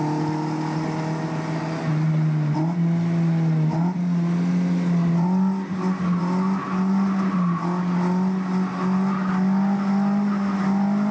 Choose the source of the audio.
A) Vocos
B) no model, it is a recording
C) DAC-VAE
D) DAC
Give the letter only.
B